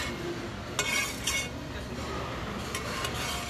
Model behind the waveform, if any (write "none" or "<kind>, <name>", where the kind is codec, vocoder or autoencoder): none